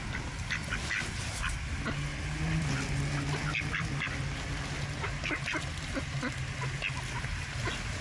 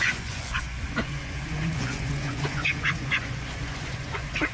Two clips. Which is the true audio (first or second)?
first